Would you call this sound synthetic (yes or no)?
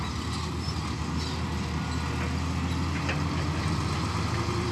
no